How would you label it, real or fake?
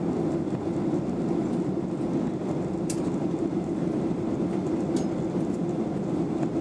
real